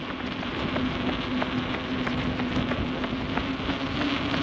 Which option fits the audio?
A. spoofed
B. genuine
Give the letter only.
B